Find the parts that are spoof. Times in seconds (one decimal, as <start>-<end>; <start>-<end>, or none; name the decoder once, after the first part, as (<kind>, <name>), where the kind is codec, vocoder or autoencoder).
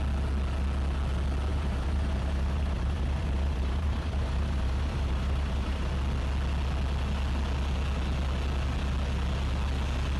1.5-5.9 (vocoder, BigVGAN v2)